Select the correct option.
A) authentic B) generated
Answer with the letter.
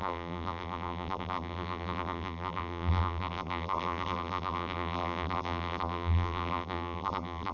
B